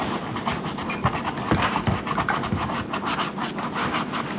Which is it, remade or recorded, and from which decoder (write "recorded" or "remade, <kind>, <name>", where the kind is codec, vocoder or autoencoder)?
recorded